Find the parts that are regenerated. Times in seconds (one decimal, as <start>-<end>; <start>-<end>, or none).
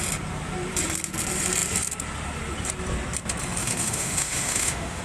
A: 3.6-5.0